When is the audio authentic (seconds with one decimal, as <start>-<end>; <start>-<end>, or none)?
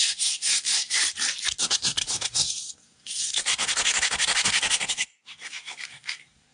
1.0-1.6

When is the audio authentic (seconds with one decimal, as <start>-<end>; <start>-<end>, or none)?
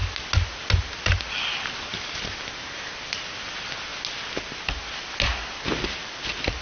0.0-6.6